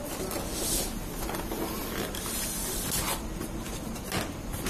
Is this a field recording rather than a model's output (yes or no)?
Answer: yes